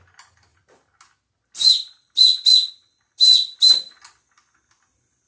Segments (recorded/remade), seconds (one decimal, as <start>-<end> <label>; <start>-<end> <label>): 0.0-5.3 recorded